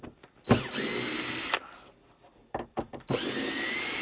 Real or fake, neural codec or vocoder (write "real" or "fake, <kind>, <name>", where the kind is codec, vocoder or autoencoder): real